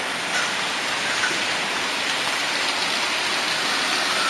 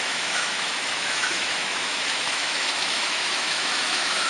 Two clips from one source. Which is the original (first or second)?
first